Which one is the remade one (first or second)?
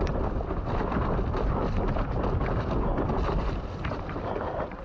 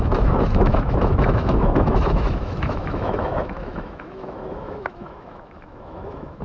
second